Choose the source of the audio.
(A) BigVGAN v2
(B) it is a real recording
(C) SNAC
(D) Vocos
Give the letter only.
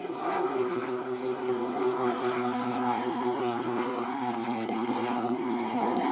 C